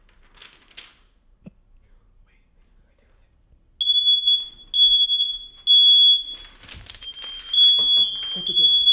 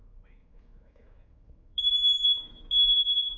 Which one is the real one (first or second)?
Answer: first